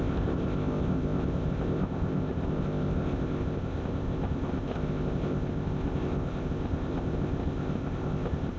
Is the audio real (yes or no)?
no